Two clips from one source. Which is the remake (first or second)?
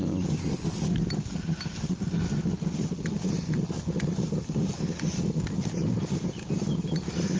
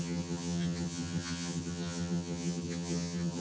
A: second